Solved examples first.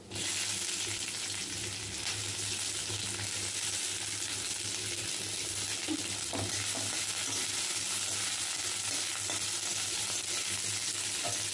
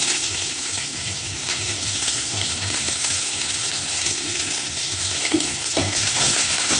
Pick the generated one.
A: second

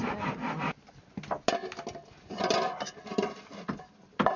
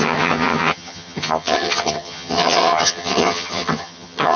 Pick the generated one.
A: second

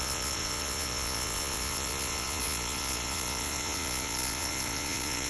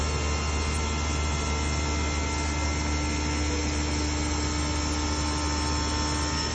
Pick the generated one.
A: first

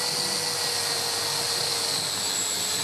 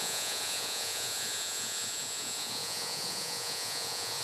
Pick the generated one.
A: second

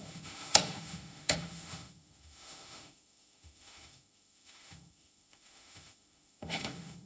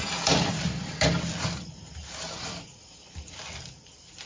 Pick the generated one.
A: first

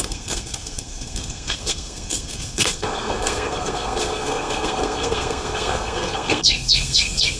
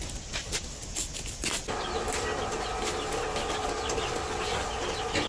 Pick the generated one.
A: first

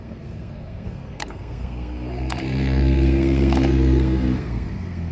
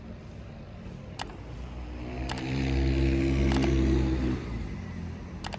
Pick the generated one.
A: first